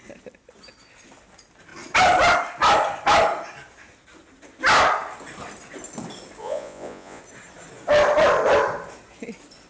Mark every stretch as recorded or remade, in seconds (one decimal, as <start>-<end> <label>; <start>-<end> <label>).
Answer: 0.0-6.4 recorded; 6.4-7.2 remade; 7.2-9.7 recorded